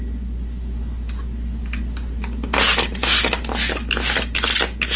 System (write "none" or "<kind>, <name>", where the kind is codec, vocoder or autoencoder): none